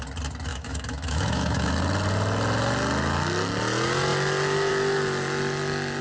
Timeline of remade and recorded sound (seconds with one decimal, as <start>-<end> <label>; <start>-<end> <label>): 0.0-0.5 recorded; 0.5-1.7 remade; 1.7-6.0 recorded